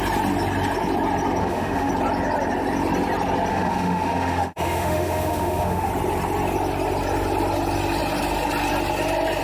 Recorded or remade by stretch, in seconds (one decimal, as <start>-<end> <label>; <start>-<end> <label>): 0.0-1.4 recorded; 1.4-1.9 remade; 1.9-3.5 recorded; 3.5-5.9 remade; 5.9-9.4 recorded